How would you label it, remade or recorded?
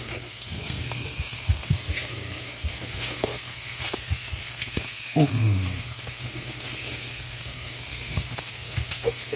remade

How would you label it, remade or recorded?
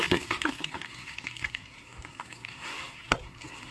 remade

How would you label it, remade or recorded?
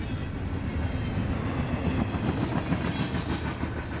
recorded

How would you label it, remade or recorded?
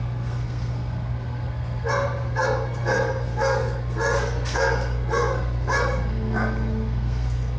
remade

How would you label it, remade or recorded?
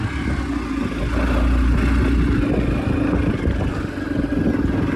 recorded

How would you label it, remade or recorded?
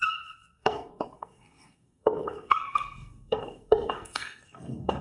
remade